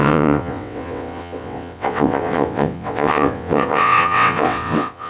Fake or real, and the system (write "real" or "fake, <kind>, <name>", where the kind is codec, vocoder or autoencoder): fake, vocoder, WaveNeXt